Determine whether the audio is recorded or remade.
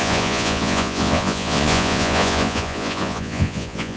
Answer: remade